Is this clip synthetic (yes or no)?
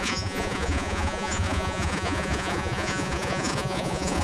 yes